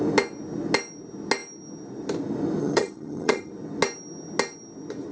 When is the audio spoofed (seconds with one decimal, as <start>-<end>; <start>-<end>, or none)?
2.6-3.5